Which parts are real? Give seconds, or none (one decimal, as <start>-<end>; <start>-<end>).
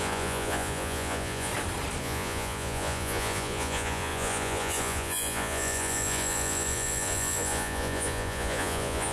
1.5-2.0